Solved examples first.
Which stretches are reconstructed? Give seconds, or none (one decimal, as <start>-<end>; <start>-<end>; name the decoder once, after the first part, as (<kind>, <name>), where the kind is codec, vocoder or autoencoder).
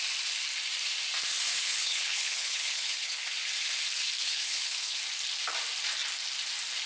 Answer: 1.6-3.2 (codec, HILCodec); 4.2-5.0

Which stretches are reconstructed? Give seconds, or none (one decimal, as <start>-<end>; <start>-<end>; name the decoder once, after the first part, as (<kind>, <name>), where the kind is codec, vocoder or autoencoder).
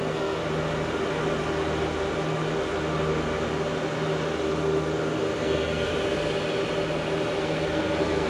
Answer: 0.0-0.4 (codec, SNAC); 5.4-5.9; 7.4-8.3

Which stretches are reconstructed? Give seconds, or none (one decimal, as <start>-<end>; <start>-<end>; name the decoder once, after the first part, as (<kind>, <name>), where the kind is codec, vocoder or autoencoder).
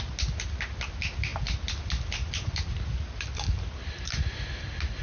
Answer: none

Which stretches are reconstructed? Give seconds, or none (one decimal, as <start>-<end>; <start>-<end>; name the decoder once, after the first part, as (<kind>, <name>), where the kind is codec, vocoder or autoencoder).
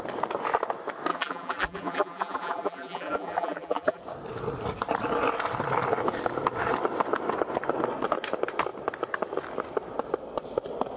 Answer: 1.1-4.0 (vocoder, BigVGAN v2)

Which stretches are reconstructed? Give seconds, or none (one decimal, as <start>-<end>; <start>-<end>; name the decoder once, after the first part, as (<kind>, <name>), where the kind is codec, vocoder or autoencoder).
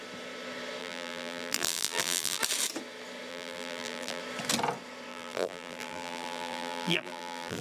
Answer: 0.8-2.4 (vocoder, BigVGAN v2); 3.3-4.2; 5.1-7.6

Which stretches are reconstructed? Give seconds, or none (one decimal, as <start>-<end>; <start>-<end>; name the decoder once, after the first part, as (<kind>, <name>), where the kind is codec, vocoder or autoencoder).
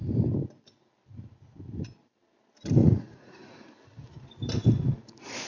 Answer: 2.8-3.7 (vocoder, Vocos)